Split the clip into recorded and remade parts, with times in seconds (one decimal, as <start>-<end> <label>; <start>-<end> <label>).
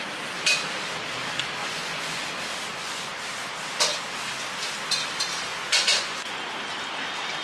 0.0-1.6 recorded; 1.6-2.3 remade; 2.3-2.7 recorded; 2.7-3.2 remade; 3.2-5.5 recorded; 5.5-6.5 remade; 6.5-7.4 recorded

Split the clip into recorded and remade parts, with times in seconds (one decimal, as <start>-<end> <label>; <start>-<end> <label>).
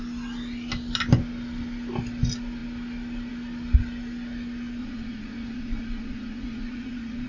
0.0-4.8 recorded; 4.8-7.3 remade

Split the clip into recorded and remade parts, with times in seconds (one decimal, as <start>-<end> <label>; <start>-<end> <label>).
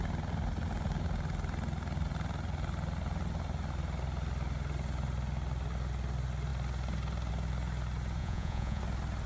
0.0-8.2 recorded; 8.2-8.8 remade; 8.8-9.3 recorded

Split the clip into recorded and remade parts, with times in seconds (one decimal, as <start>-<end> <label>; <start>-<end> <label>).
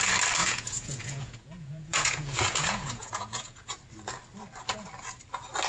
0.0-0.4 recorded; 0.4-3.8 remade; 3.8-5.7 recorded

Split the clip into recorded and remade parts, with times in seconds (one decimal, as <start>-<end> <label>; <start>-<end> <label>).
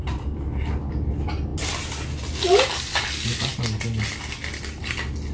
0.0-5.3 recorded